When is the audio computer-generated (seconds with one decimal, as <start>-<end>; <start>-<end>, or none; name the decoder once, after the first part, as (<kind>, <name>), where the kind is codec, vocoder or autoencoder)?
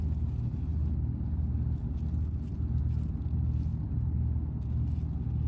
none